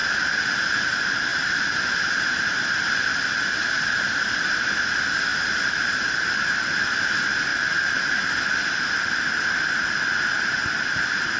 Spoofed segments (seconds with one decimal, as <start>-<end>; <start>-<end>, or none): 1.3-1.8; 5.3-6.6